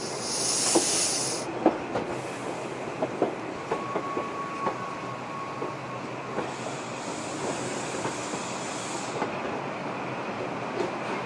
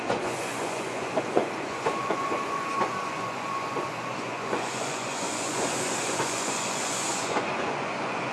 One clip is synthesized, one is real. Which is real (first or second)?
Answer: first